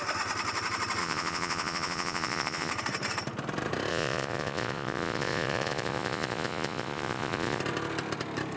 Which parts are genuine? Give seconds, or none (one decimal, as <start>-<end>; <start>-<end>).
0.0-1.0; 2.7-3.9; 7.6-8.6